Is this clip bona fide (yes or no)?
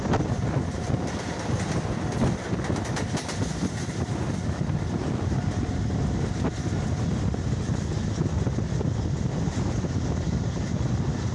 yes